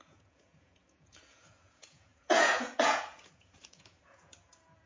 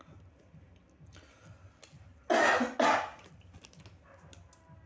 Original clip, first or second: second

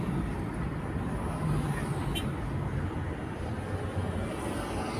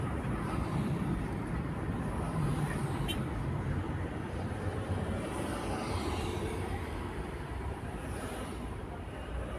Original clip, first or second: first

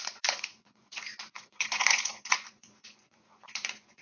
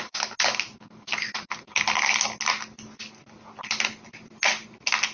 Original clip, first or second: second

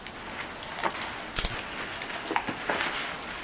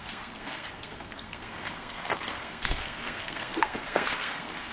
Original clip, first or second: first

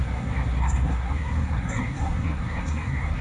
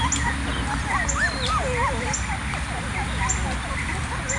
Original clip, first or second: second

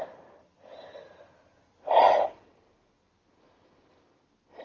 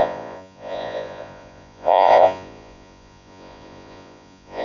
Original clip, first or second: first